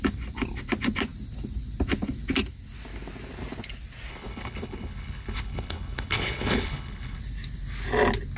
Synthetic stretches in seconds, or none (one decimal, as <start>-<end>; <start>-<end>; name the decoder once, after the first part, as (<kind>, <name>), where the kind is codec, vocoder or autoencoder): 4.1-7.2 (codec, HILCodec)